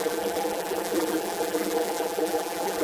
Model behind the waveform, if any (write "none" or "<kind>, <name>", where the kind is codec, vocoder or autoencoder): vocoder, BigVGAN v2